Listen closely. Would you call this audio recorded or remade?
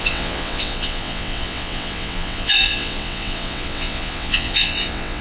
remade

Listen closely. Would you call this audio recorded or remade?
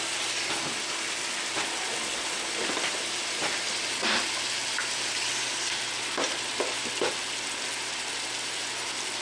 recorded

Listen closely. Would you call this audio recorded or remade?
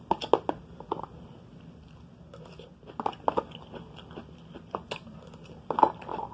recorded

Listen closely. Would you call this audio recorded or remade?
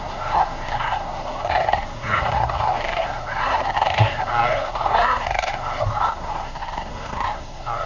remade